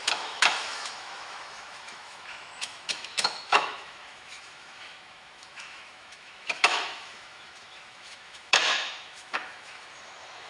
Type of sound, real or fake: fake